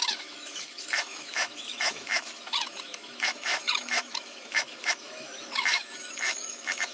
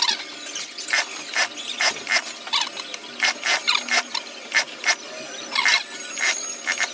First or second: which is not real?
first